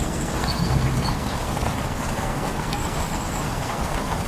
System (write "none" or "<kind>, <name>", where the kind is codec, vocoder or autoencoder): codec, SNAC